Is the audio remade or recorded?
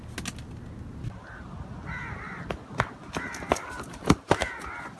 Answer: recorded